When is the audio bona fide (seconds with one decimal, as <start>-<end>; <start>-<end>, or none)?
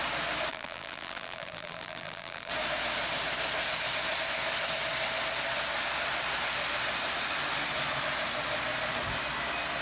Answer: 0.0-0.5; 2.5-9.8